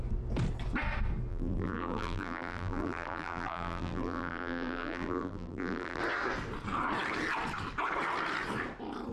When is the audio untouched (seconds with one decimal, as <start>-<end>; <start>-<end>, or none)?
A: 0.0-1.3; 6.0-9.1